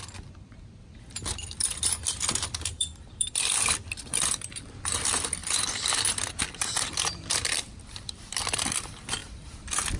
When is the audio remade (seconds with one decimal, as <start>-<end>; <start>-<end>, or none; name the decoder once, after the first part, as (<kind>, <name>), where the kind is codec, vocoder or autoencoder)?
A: 0.0-5.4 (vocoder, BigVGAN v2); 6.4-10.0

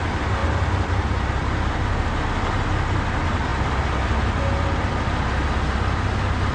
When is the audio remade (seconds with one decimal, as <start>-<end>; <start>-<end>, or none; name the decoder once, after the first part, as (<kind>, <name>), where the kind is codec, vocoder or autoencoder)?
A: 0.4-2.0 (vocoder, BigVGAN v2); 3.5-4.9

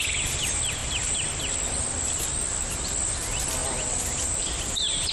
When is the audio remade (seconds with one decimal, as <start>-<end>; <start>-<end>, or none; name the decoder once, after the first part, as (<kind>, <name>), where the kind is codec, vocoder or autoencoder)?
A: 0.8-2.4 (vocoder, BigVGAN v2); 3.6-5.1